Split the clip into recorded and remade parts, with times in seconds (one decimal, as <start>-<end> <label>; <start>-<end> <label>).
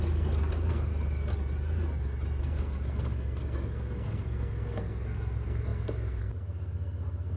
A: 0.0-0.9 remade; 0.9-2.4 recorded; 2.4-7.4 remade